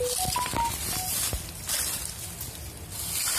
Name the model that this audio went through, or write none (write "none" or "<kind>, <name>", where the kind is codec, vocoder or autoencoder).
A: none